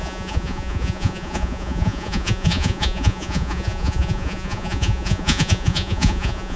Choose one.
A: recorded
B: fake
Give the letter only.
B